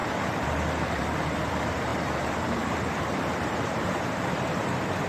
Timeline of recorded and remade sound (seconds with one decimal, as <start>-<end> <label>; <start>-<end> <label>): 0.0-5.1 remade